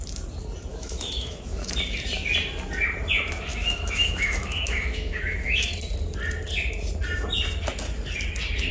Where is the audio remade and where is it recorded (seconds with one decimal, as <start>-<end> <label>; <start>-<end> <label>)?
0.0-0.7 recorded; 0.7-1.7 remade; 1.7-3.5 recorded; 3.5-5.7 remade; 5.7-8.7 recorded